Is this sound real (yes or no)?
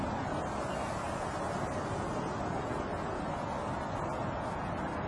yes